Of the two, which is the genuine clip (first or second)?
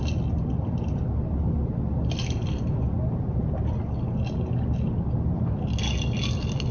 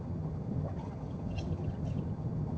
first